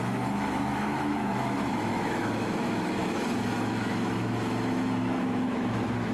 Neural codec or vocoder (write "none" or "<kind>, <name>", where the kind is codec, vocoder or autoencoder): autoencoder, DAC-VAE